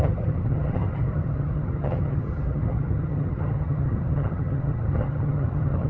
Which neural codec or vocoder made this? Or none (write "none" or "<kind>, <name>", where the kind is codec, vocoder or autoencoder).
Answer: vocoder, HiFi-GAN